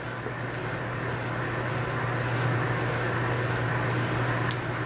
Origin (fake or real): real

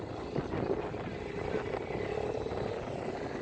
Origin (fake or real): real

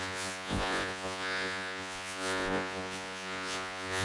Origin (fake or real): fake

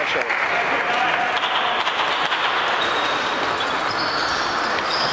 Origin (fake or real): real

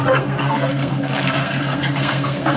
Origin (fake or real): fake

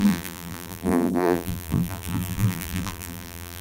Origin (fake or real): fake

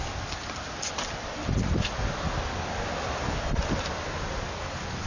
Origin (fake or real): real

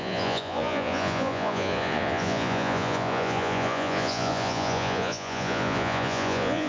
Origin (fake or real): fake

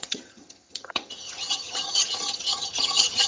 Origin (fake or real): fake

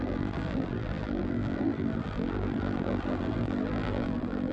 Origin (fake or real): fake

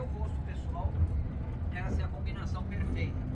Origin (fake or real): real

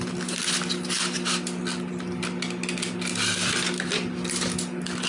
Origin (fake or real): real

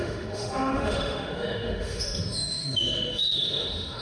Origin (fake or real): fake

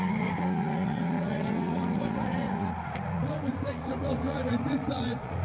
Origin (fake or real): fake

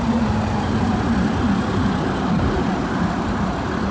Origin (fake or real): real